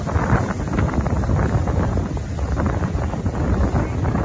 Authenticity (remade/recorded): recorded